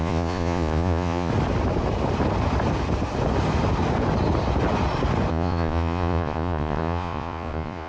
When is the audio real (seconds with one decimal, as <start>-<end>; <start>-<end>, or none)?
1.3-5.3